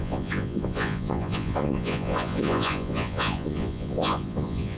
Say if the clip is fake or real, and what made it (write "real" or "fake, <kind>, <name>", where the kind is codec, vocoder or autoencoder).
fake, vocoder, Vocos